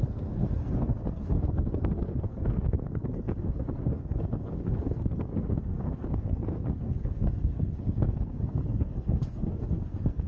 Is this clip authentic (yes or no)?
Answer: no